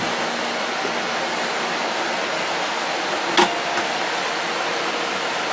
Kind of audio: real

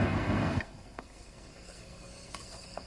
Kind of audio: fake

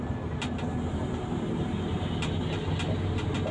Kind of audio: real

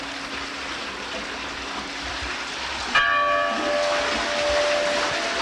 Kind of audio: real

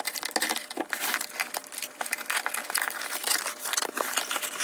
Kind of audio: real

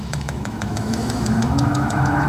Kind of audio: fake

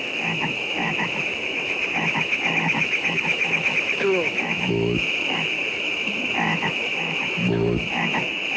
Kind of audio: fake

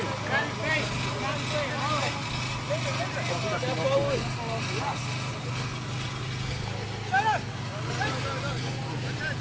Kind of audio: real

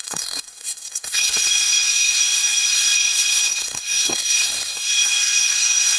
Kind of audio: fake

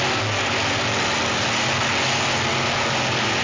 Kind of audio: real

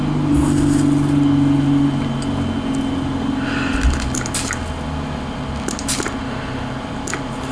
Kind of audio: real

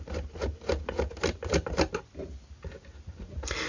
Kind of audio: real